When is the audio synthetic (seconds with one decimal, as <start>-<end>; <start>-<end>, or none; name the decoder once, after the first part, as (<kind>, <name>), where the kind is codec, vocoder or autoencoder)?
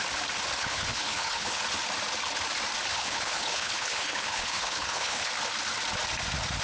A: 0.6-1.6 (codec, HILCodec); 2.9-5.3